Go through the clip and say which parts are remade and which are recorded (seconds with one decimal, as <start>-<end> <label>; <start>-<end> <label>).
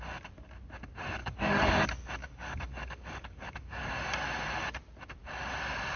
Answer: 0.0-1.2 recorded; 1.2-1.7 remade; 1.7-2.2 recorded; 2.2-3.9 remade; 3.9-6.0 recorded